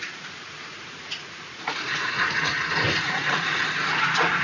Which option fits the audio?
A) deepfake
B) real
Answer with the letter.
A